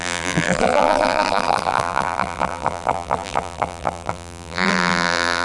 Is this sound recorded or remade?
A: remade